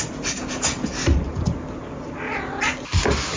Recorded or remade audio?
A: recorded